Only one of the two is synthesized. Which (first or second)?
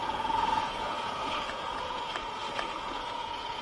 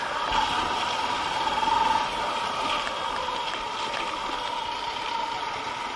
first